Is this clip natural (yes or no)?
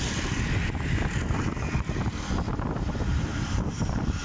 yes